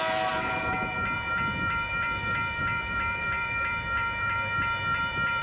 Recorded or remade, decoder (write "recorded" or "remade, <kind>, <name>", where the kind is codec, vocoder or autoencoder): remade, vocoder, BigVGAN v2